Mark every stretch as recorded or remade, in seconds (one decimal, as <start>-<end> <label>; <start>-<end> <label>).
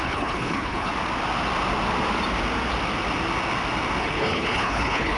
0.0-0.9 remade; 0.9-4.0 recorded; 4.0-5.2 remade